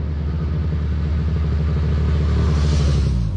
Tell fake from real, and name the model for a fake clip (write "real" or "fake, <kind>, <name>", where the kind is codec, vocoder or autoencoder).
real